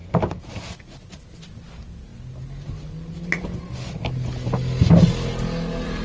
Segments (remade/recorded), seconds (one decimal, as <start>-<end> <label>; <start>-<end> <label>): 0.0-6.0 recorded